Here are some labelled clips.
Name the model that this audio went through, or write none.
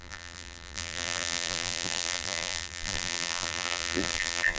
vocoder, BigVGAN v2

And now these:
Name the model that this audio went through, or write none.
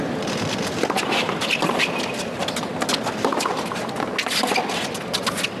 none